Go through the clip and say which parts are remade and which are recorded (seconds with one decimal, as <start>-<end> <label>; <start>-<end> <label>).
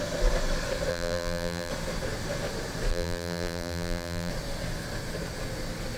0.0-0.9 recorded; 0.9-1.7 remade; 1.7-2.9 recorded; 2.9-4.3 remade; 4.3-6.0 recorded